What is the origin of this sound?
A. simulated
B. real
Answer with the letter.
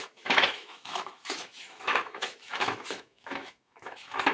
A